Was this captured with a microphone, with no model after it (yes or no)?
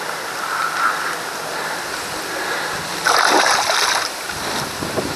no